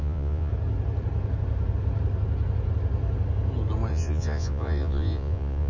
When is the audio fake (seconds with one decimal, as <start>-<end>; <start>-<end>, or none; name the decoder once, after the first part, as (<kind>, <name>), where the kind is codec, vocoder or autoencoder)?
0.0-0.5 (vocoder, Vocos); 3.9-5.7